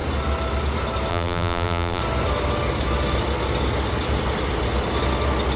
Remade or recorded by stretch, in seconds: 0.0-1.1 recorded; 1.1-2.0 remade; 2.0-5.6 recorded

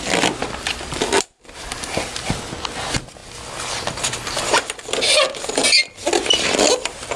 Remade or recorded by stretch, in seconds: 0.0-0.4 recorded; 0.4-2.3 remade; 2.3-3.2 recorded; 3.2-4.9 remade; 4.9-7.2 recorded

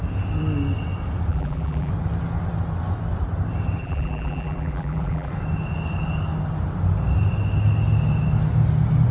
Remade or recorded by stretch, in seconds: 0.0-1.3 recorded; 1.3-1.9 remade; 1.9-3.8 recorded; 3.8-5.3 remade; 5.3-9.1 recorded

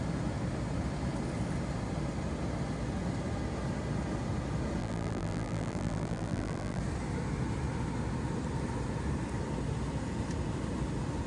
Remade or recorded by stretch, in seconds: 0.0-4.8 recorded; 4.8-6.8 remade; 6.8-11.3 recorded